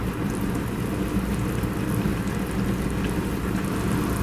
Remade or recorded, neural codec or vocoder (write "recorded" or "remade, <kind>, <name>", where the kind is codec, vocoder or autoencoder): recorded